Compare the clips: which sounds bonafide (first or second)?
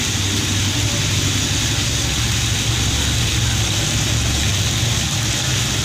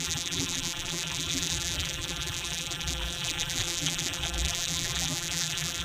first